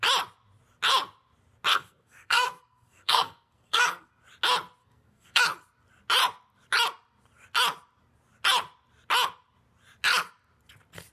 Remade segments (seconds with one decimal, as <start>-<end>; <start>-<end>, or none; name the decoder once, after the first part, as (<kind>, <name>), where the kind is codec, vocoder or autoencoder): 1.7-4.1 (codec, SNAC); 4.8-5.4